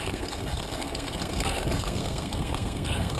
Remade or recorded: remade